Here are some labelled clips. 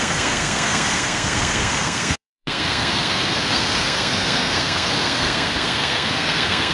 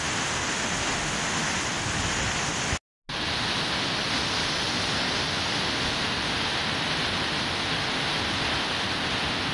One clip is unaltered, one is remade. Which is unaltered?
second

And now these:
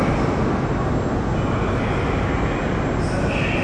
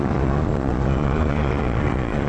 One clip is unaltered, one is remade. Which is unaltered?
first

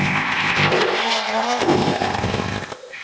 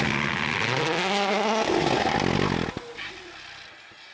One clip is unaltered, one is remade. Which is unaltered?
second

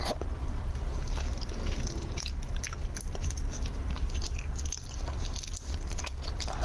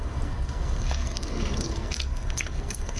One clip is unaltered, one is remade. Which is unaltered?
first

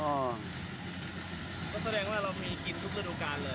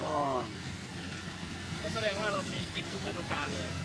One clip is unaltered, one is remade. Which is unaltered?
first